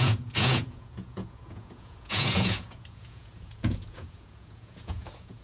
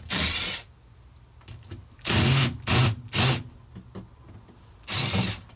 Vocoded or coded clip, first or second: first